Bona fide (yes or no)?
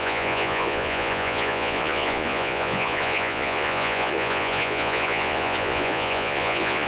no